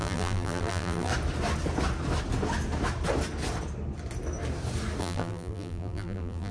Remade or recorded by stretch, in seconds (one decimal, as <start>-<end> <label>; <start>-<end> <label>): 0.0-1.1 remade; 1.1-5.0 recorded; 5.0-6.5 remade